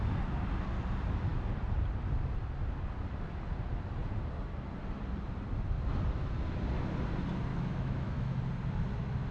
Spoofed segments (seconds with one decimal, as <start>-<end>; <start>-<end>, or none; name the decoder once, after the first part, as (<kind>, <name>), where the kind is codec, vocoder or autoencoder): 7.5-8.4 (autoencoder, DAC-VAE)